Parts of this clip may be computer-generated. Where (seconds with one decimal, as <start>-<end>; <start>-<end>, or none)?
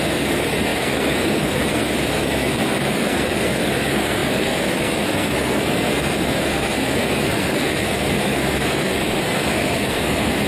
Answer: 0.0-10.5